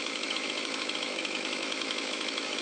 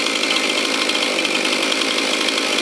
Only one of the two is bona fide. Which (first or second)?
second